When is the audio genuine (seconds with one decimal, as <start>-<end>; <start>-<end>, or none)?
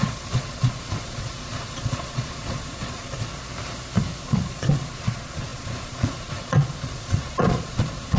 3.3-4.2